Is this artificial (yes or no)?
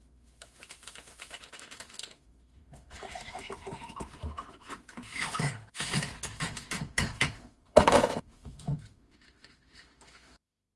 yes